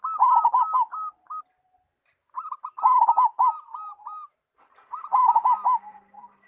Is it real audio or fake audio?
real